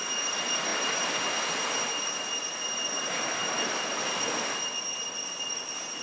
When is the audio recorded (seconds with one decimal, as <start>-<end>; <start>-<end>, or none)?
0.0-6.0